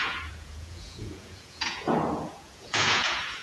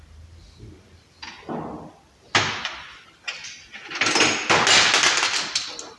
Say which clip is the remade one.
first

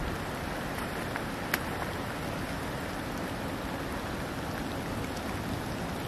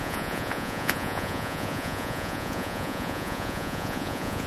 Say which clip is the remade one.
second